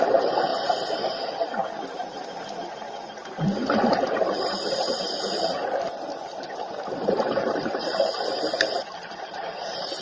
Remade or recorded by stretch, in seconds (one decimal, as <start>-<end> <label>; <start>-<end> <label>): 0.0-0.5 remade; 0.5-3.9 recorded; 3.9-10.0 remade